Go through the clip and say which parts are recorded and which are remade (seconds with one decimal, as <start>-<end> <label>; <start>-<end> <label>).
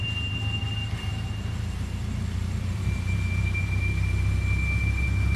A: 0.0-5.4 recorded